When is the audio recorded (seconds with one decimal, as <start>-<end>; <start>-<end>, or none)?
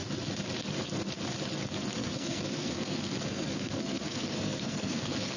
0.0-2.0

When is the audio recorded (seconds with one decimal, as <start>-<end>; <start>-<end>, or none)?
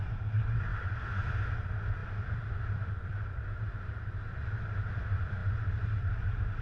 none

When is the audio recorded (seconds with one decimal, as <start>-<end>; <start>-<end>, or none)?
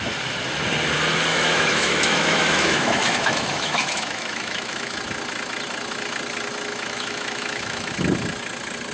0.0-1.3; 5.0-6.7; 7.9-8.9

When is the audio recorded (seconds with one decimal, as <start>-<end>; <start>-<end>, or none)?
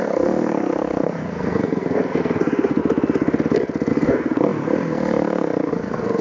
2.8-3.9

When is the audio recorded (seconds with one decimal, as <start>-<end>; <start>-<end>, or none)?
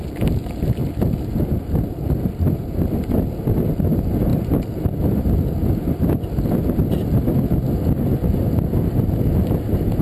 0.0-10.0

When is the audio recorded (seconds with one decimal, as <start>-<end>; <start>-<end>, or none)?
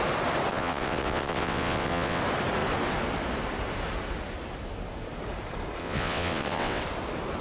0.0-0.5; 2.2-5.8; 6.8-7.4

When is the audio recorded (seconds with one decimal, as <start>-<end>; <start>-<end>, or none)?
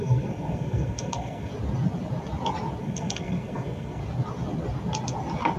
1.5-2.8; 4.0-5.6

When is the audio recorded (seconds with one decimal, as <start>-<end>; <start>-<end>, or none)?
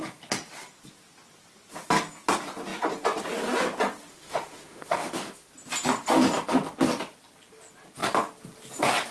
0.0-4.1; 5.5-9.1